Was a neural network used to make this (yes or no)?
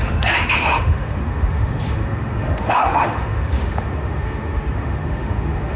yes